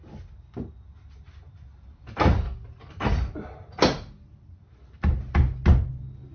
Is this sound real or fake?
real